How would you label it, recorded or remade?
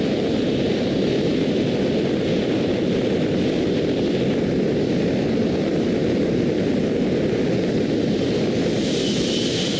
recorded